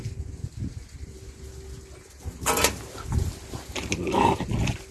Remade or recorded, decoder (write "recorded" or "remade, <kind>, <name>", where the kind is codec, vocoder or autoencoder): recorded